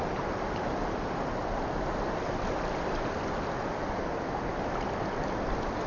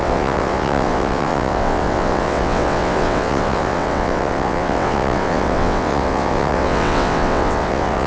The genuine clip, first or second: first